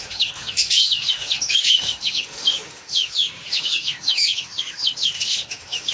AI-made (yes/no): yes